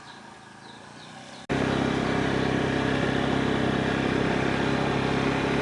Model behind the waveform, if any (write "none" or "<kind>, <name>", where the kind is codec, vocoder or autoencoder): none